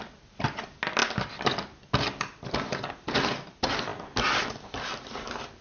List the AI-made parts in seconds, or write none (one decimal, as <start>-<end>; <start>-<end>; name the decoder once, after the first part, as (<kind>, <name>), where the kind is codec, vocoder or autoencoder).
none